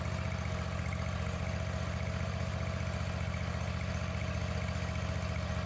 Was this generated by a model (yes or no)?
no